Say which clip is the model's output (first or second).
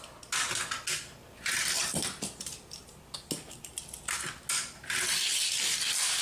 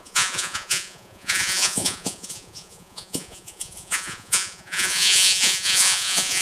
second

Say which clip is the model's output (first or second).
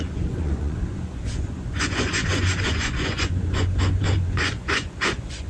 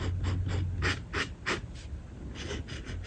first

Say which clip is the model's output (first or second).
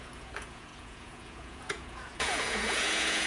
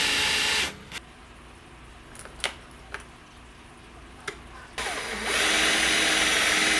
first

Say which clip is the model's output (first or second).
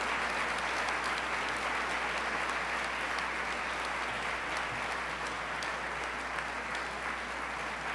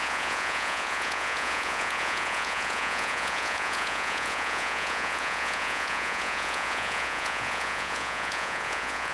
second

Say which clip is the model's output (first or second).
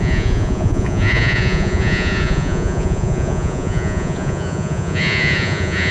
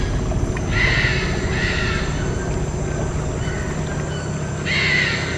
first